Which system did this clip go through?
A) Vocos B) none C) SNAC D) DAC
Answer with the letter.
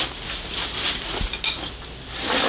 B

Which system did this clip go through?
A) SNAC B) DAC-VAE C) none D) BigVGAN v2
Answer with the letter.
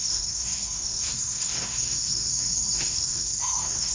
A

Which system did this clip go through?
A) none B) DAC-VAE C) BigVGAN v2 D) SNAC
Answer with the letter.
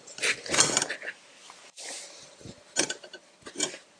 A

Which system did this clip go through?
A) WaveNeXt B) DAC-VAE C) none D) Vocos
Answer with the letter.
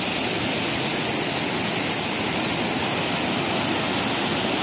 C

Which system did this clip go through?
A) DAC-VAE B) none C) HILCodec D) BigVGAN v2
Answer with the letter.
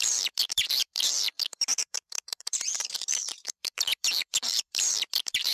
D